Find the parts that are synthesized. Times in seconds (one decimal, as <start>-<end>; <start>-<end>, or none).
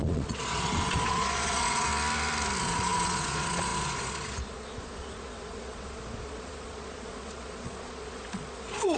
0.0-1.9; 2.6-9.0